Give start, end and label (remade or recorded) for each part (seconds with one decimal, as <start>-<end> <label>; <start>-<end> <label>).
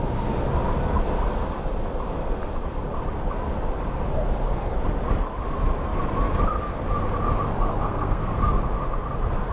0.0-7.7 recorded; 7.7-8.4 remade; 8.4-9.5 recorded